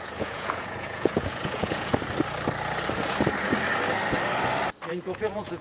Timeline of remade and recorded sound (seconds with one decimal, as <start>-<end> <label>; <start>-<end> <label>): 0.0-1.9 remade; 1.9-4.9 recorded; 4.9-5.6 remade